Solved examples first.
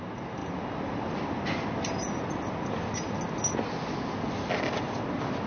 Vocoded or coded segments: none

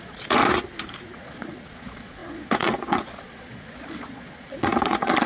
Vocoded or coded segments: 0.0-0.4 (vocoder, Vocos); 1.0-5.3

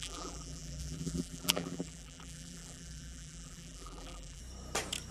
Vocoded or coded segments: 0.0-4.4 (vocoder, BigVGAN v2)

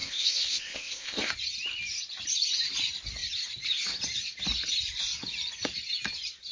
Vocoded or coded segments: 0.0-1.3 (codec, ZipCodec)

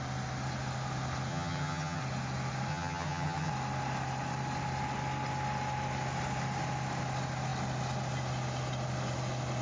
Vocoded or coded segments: 1.3-2.0 (vocoder, HiFi-GAN); 2.7-3.5

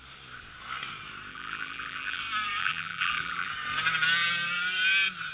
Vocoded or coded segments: 1.3-2.2 (vocoder, BigVGAN v2); 2.6-3.5

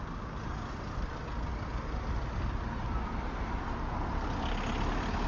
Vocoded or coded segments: none